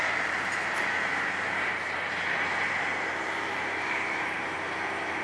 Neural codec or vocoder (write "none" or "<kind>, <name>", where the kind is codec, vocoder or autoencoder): vocoder, BigVGAN v2